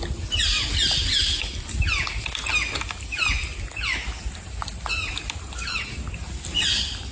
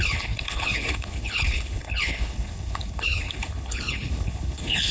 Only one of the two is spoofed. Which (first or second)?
second